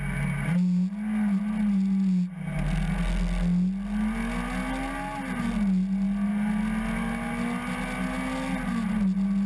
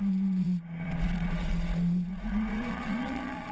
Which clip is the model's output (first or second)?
second